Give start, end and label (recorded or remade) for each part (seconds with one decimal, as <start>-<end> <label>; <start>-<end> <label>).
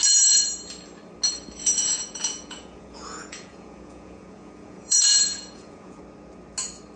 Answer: 0.0-1.8 recorded; 1.8-6.0 remade; 6.0-7.0 recorded